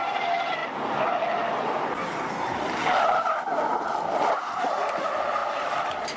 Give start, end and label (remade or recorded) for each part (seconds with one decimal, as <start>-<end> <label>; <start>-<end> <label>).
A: 0.0-6.2 recorded